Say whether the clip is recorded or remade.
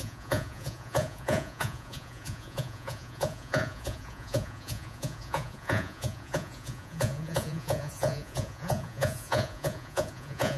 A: remade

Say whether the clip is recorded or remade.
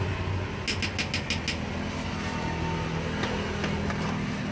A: recorded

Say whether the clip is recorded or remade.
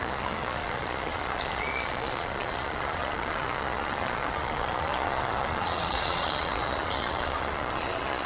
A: remade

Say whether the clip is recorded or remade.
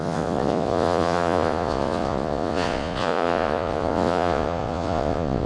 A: remade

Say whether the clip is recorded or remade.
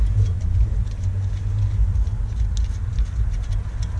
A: recorded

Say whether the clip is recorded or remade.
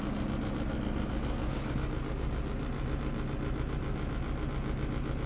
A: recorded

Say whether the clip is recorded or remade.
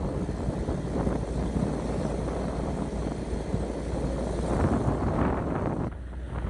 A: recorded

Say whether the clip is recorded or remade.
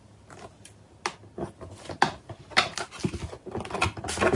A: recorded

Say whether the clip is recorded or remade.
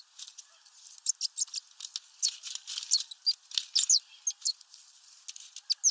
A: recorded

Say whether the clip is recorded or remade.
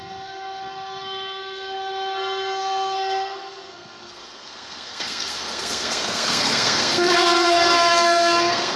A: remade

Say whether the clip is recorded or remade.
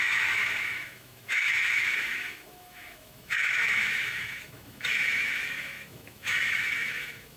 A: remade